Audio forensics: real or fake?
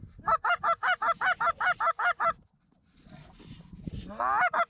real